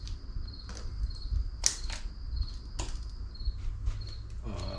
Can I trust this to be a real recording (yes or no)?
yes